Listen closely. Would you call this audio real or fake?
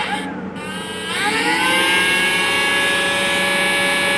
real